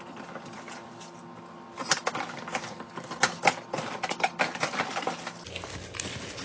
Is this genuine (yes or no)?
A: yes